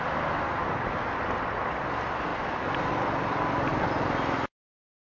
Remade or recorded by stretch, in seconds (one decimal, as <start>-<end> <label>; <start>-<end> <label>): 0.0-5.0 recorded